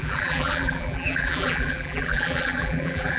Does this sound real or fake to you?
fake